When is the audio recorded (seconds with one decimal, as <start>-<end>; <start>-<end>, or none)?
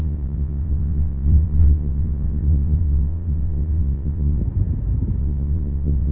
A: 4.4-5.2